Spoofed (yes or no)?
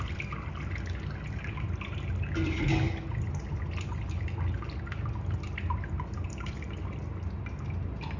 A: no